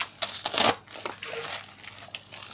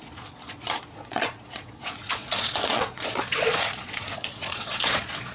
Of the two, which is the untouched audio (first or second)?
first